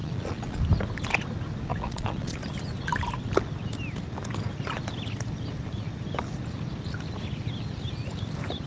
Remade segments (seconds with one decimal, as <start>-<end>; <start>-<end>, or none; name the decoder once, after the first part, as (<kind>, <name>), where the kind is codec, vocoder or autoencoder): 0.0-0.6 (vocoder, Vocos); 1.7-2.4